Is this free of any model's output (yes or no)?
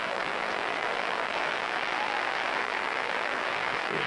no